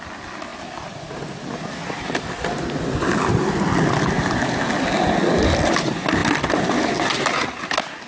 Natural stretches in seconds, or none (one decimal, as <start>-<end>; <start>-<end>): 0.0-8.1